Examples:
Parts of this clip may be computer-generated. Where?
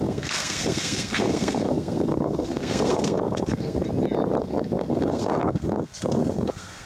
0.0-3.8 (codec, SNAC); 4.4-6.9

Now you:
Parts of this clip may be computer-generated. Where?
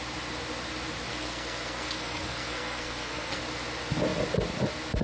1.1-3.4 (codec, SNAC)